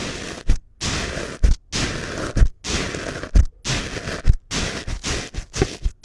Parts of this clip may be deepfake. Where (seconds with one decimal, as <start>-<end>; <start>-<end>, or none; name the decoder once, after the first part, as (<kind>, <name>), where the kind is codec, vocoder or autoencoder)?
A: none